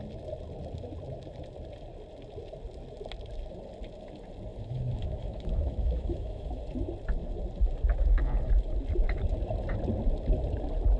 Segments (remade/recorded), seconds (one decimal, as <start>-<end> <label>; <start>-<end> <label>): 0.0-4.5 recorded; 4.5-6.6 remade; 6.6-11.0 recorded